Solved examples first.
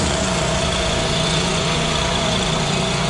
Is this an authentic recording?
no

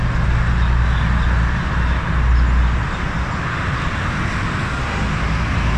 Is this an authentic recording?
yes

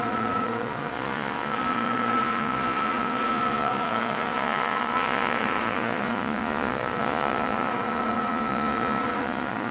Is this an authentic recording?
no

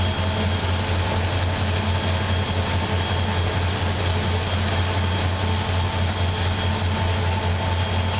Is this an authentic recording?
yes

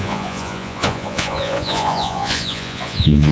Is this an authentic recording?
no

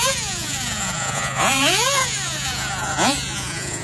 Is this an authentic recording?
no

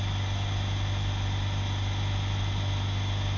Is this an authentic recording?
yes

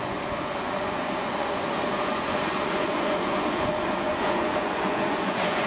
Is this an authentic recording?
no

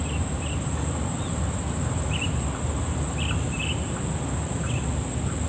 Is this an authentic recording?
yes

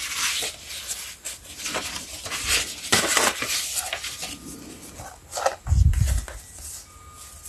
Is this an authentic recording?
yes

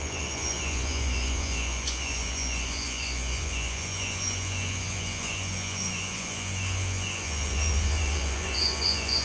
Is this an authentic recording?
no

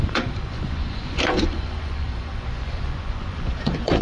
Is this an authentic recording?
no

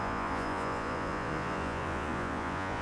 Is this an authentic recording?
no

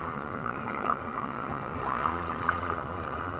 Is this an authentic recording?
no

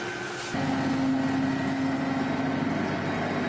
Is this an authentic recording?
yes